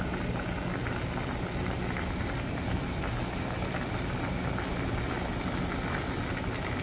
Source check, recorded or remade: recorded